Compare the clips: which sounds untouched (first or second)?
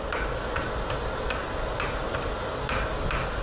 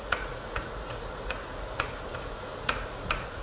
first